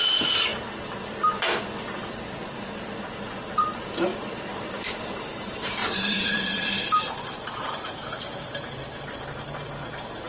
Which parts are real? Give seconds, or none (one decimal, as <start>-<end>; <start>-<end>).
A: 0.5-3.5